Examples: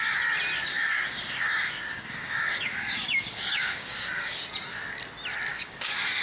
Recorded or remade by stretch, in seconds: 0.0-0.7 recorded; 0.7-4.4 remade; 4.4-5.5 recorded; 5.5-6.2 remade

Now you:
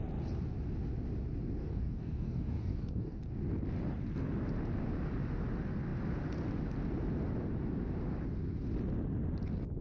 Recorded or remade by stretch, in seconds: 0.0-1.6 recorded; 1.6-3.2 remade; 3.2-9.8 recorded

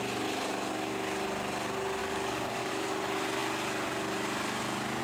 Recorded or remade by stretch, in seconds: 0.0-2.0 recorded; 2.0-2.7 remade; 2.7-5.0 recorded

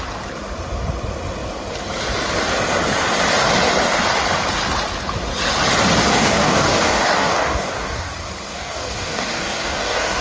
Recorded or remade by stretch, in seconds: 0.0-6.1 recorded; 6.1-8.1 remade; 8.1-8.5 recorded; 8.5-10.2 remade

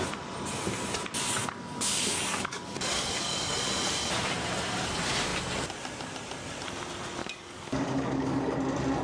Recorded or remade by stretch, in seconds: 0.0-1.4 recorded; 1.4-3.6 remade; 3.6-7.2 recorded; 7.2-8.4 remade; 8.4-9.0 recorded

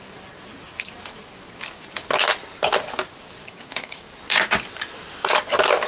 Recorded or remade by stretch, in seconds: 0.0-3.4 recorded; 3.4-4.1 remade; 4.1-5.9 recorded

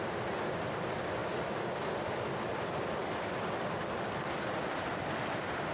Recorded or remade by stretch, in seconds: 0.0-5.7 recorded

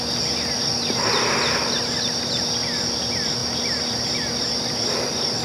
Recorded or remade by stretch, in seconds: 0.0-5.4 recorded